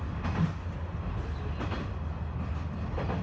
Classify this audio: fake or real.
real